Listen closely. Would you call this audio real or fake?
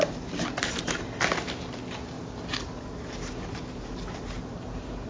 real